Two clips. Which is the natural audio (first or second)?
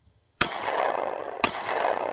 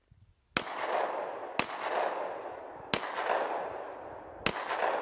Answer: second